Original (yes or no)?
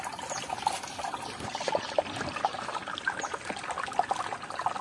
yes